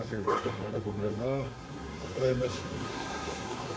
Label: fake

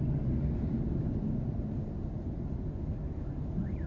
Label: real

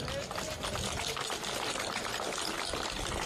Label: real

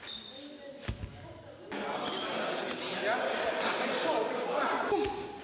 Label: real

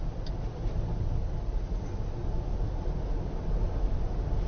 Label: real